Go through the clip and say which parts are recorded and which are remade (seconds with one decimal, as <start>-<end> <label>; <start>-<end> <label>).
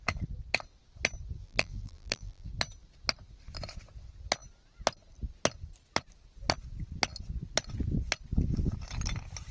0.0-1.4 recorded; 1.4-2.5 remade; 2.5-9.5 recorded